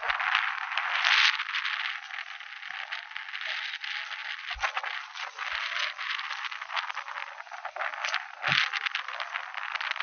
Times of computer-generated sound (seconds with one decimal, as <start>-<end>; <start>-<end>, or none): none